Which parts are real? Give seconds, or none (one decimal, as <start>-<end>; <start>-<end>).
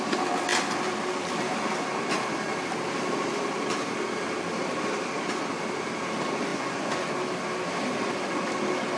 0.0-6.5; 7.1-9.0